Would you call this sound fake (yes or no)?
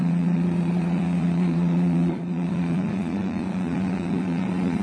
yes